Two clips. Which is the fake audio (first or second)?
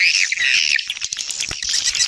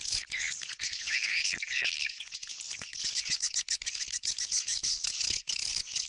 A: second